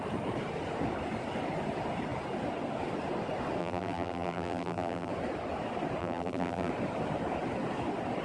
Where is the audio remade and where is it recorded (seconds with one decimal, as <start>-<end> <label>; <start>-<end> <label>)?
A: 0.0-3.6 recorded; 3.6-5.1 remade; 5.1-6.0 recorded; 6.0-6.7 remade; 6.7-8.2 recorded